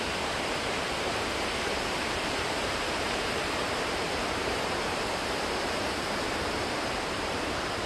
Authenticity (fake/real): fake